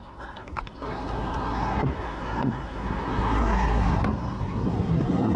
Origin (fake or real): fake